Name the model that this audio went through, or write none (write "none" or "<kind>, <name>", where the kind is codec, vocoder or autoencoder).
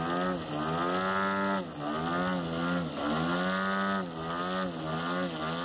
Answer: none